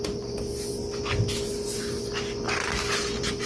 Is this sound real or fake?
real